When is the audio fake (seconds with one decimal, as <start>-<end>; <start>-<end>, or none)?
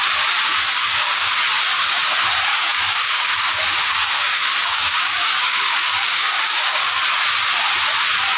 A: 0.5-1.3; 2.5-7.0